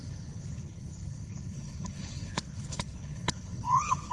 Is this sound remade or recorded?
remade